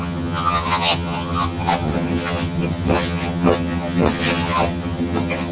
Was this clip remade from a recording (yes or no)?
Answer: yes